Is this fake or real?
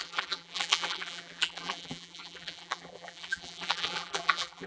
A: fake